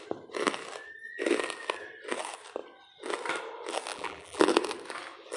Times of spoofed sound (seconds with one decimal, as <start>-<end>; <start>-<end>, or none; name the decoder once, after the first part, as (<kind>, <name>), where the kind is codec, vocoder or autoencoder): 3.9-4.5 (vocoder, BigVGAN v2)